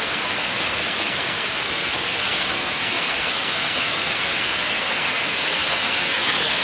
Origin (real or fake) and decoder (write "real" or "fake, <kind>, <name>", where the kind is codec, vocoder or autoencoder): fake, codec, SNAC